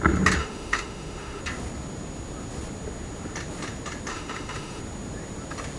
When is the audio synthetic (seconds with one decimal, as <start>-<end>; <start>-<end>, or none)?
0.4-1.4; 4.1-4.8